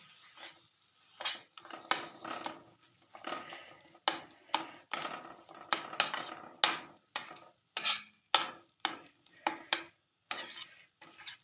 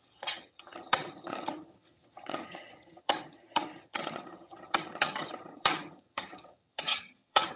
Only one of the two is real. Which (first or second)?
first